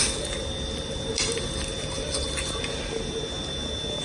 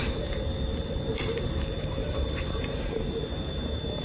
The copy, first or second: second